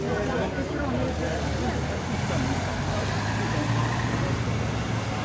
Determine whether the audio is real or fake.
real